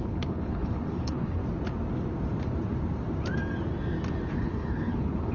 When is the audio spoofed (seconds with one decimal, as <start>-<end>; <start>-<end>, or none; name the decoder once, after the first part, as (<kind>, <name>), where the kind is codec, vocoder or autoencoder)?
0.0-1.4 (codec, HILCodec); 4.3-5.3